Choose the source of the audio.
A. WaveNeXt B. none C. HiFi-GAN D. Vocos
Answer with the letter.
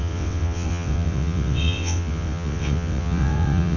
A